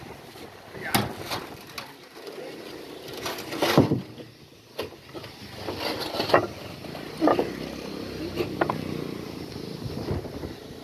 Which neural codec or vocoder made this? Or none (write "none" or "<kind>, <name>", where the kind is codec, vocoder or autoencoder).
none